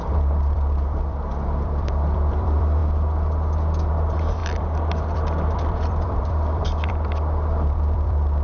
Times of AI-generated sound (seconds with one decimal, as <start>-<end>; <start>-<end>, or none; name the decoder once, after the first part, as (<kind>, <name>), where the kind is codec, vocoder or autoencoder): 0.0-2.8 (vocoder, BigVGAN v2); 3.9-8.4